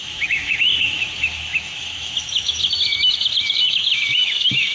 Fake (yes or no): yes